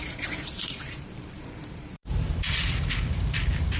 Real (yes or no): no